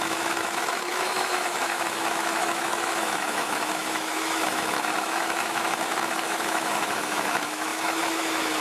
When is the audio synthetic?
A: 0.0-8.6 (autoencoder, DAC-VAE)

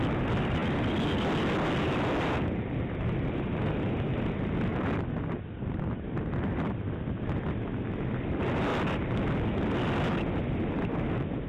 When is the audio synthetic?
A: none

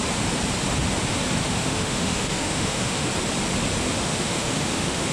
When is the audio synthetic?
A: 1.4-3.1 (autoencoder, DAC-VAE); 4.0-5.1

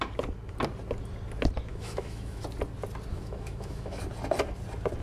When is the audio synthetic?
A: 1.7-2.4 (autoencoder, DAC-VAE); 3.1-4.0

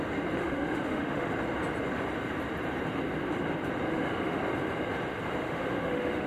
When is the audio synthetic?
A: 0.4-1.3 (autoencoder, DAC-VAE); 3.9-4.4; 5.4-6.3